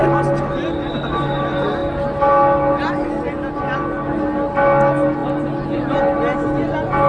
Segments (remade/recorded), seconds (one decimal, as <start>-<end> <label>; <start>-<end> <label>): 0.0-7.1 recorded